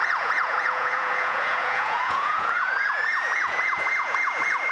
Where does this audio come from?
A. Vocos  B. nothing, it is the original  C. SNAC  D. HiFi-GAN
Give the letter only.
A